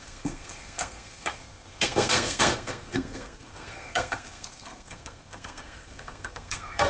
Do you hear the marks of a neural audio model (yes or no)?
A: yes